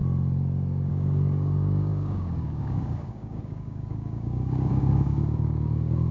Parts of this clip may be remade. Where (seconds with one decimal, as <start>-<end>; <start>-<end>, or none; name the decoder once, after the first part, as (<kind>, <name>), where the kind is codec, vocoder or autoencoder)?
0.9-6.1 (codec, DAC)